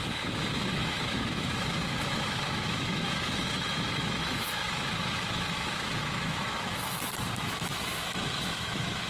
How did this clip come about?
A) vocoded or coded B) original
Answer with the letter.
A